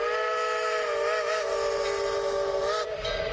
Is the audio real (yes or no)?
yes